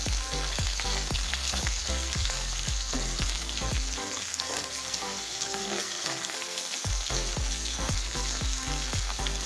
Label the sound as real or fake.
fake